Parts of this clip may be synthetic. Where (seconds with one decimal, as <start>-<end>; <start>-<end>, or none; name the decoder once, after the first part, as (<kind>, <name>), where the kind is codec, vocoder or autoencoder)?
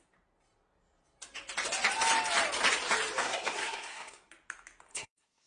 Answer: 3.2-4.3 (codec, SNAC); 4.9-5.5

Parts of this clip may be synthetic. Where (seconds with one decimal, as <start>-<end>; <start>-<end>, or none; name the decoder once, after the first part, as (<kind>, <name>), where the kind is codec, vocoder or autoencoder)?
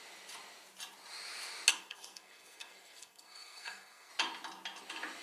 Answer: 1.7-4.1 (codec, SNAC)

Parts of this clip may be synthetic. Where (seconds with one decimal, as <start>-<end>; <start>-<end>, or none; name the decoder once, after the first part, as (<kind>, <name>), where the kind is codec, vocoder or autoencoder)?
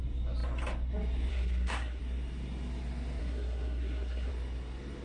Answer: 1.3-2.0 (codec, SNAC); 3.2-4.3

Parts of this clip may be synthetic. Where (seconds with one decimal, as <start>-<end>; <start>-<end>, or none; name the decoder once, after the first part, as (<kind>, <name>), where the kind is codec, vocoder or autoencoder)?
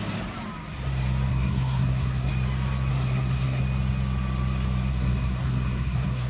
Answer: 1.3-2.3 (codec, SNAC); 2.9-3.6; 4.9-6.3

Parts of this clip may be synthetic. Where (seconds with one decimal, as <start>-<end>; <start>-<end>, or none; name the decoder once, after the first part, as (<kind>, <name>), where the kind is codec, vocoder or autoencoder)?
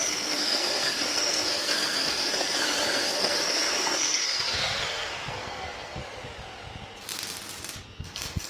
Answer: 0.0-6.0 (codec, SNAC); 8.0-8.5